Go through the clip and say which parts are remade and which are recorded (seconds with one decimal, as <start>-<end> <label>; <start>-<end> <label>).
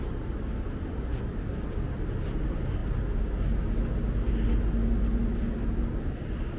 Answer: 0.0-6.6 recorded